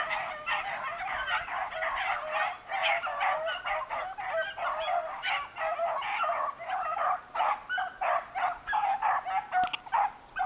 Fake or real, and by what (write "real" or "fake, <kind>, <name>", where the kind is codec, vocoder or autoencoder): real